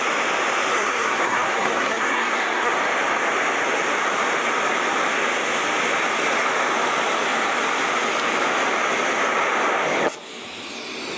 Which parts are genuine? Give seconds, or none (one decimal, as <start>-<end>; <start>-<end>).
0.0-0.7; 2.7-11.2